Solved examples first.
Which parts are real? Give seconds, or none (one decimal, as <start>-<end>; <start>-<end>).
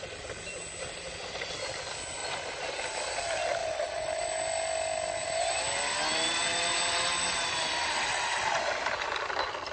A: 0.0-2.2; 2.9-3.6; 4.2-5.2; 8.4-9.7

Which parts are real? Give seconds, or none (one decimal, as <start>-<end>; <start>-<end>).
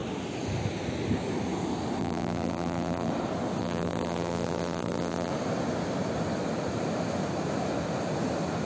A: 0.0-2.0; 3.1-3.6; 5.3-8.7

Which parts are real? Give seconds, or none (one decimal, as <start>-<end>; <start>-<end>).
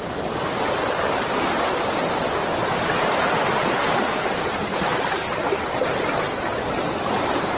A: 0.0-2.4; 5.8-7.6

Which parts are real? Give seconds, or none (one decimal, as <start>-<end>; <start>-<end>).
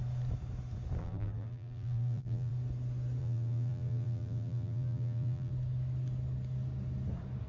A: 0.0-1.0; 2.5-3.2; 5.5-7.5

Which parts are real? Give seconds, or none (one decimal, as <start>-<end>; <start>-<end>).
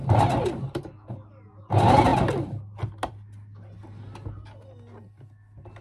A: 0.8-5.8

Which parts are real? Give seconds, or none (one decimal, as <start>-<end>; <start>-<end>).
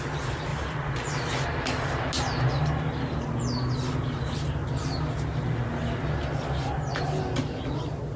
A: 0.0-0.5; 1.6-8.2